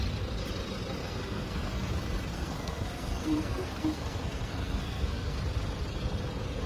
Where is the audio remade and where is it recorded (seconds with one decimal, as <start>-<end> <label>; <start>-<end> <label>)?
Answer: 0.0-1.0 recorded; 1.0-1.9 remade; 1.9-2.3 recorded; 2.3-5.4 remade; 5.4-6.7 recorded